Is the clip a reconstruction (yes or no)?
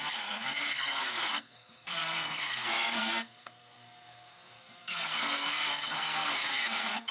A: yes